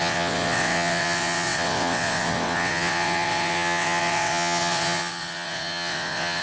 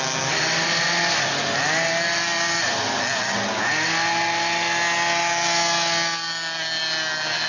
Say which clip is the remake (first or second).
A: first